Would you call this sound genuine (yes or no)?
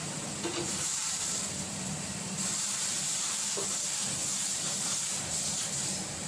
no